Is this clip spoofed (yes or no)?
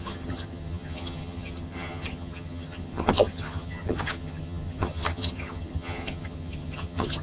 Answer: yes